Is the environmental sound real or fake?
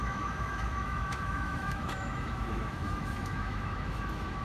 fake